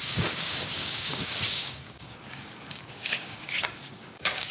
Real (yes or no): no